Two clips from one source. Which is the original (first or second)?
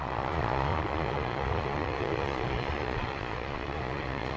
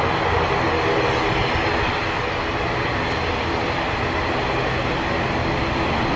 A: second